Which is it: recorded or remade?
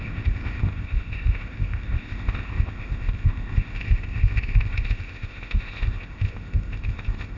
remade